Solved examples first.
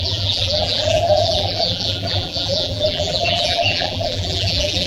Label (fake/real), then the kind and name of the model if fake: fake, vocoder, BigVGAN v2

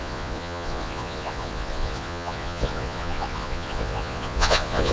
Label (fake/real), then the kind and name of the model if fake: fake, vocoder, Vocos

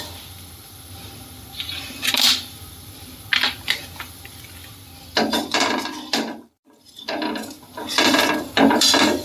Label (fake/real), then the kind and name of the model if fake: fake, vocoder, BigVGAN v2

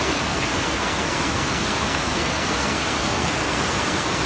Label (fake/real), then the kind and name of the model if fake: fake, codec, SNAC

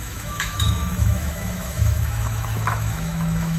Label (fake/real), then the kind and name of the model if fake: fake, autoencoder, DAC-VAE